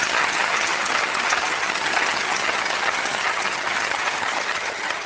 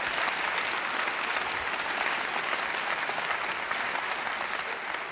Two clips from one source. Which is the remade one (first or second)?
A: first